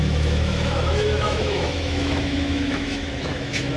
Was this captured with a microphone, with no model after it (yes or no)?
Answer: no